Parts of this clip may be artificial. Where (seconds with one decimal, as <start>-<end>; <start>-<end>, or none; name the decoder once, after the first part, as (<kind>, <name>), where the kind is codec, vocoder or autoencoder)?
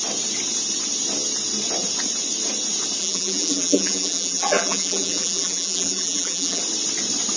3.0-6.6 (vocoder, BigVGAN v2)